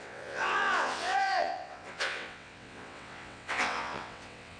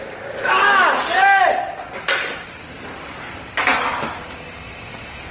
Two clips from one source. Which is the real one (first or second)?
second